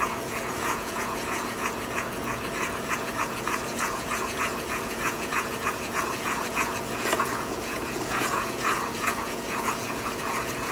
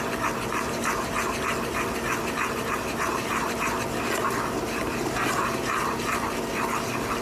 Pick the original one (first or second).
second